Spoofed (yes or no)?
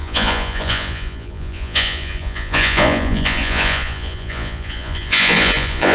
yes